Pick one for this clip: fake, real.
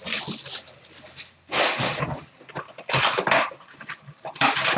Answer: real